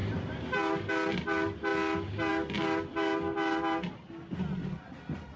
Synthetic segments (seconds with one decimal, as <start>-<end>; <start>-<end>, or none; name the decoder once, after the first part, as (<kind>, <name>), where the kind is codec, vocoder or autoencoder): none